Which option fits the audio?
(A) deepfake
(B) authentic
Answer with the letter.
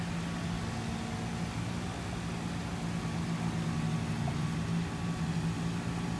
B